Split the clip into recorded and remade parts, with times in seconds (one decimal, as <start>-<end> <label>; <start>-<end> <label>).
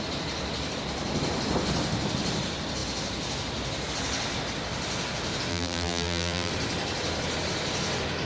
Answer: 0.0-5.5 recorded; 5.5-6.5 remade; 6.5-8.3 recorded